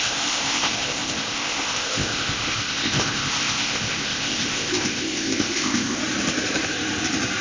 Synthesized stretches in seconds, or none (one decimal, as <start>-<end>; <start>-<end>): 0.0-6.0